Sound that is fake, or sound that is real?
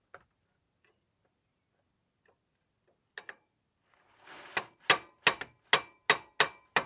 real